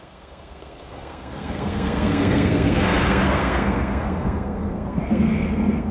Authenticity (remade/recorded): remade